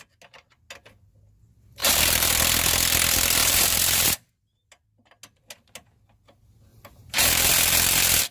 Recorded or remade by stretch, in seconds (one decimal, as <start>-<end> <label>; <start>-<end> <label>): 0.0-1.8 recorded; 1.8-2.3 remade; 2.3-3.4 recorded; 3.4-4.3 remade; 4.3-6.7 recorded; 6.7-7.3 remade; 7.3-8.3 recorded